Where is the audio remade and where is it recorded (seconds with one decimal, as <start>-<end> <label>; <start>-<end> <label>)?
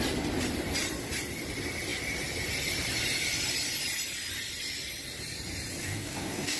0.0-5.8 recorded; 5.8-6.6 remade